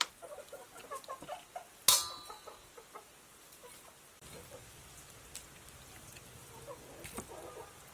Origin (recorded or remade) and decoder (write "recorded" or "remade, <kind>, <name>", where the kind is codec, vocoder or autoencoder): recorded